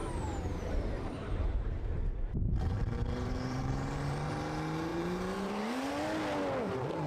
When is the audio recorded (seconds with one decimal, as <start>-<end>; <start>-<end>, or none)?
4.3-4.9; 5.9-7.1